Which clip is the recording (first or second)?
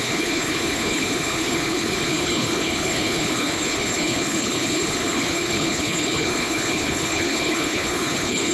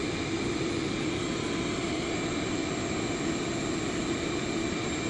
second